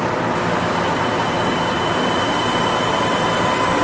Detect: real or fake real